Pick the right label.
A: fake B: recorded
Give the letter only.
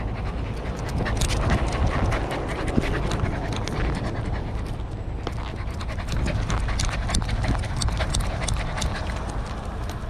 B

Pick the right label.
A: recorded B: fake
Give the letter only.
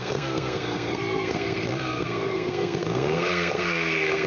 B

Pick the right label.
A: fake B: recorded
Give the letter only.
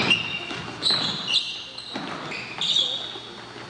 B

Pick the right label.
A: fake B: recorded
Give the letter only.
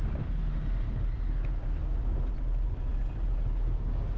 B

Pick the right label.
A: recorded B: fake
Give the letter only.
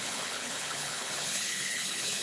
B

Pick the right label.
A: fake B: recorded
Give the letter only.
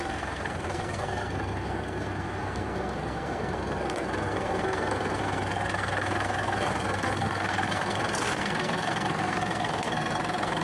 A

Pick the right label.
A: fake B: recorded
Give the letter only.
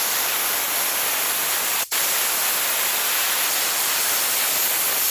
A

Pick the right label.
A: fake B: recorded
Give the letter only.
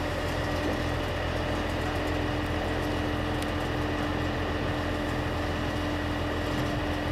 B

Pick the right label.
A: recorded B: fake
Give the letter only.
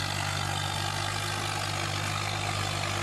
A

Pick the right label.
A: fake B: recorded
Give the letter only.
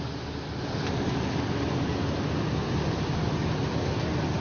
B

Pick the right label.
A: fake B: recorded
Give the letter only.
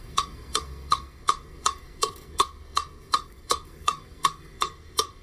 A